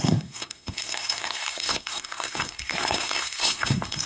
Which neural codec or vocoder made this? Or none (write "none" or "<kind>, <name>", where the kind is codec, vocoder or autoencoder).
codec, SNAC